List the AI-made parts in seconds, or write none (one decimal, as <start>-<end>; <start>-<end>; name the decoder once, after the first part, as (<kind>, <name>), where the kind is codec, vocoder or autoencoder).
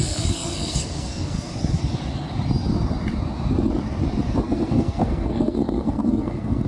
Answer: 0.0-1.5 (codec, SNAC); 4.4-6.7